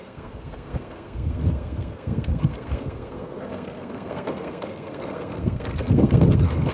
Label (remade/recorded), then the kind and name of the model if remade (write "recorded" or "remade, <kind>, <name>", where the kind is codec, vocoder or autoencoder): remade, codec, SNAC